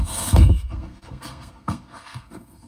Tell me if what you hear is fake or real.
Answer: fake